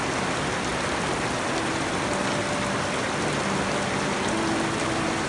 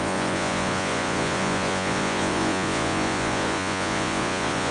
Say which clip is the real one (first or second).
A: first